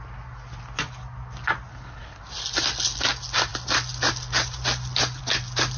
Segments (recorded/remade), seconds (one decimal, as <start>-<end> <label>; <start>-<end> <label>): 0.0-1.7 recorded; 1.7-2.2 remade; 2.2-5.8 recorded